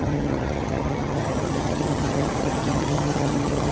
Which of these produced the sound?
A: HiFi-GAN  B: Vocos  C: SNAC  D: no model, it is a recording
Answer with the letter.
A